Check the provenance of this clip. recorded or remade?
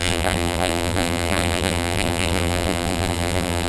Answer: remade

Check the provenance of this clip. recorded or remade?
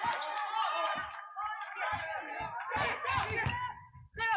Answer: recorded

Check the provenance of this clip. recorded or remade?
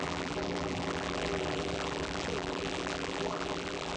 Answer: remade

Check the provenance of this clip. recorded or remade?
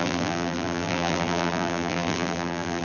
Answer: remade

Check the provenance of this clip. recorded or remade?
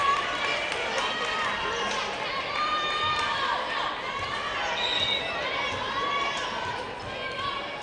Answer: remade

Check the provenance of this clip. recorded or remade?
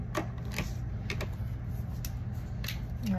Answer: recorded